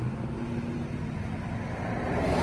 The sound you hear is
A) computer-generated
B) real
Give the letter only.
B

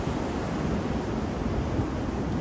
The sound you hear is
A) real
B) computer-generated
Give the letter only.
A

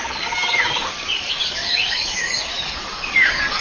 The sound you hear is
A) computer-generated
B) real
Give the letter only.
A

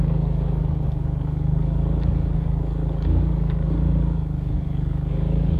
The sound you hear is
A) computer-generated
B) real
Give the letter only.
A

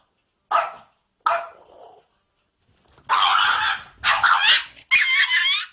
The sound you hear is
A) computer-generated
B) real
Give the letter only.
B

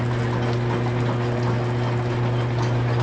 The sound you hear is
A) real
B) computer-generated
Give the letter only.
A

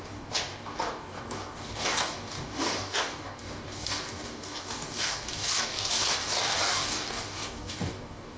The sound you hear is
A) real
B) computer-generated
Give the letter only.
B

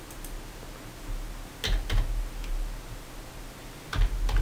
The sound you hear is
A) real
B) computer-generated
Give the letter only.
A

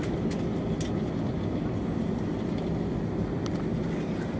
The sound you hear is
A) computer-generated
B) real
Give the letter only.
B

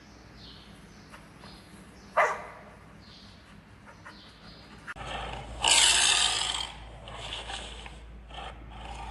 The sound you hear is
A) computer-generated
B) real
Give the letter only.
B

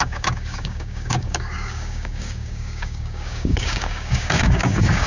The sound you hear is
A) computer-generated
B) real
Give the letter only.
A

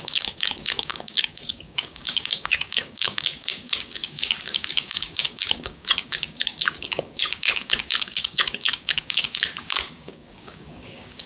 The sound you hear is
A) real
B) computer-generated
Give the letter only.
B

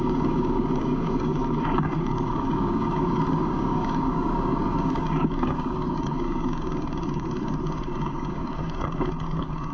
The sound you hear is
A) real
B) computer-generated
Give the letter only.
B